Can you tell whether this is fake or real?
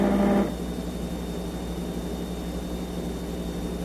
real